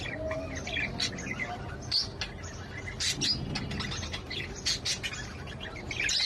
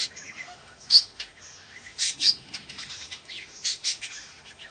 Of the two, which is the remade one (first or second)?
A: second